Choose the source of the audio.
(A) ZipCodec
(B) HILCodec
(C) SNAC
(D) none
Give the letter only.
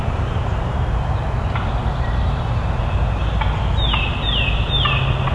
D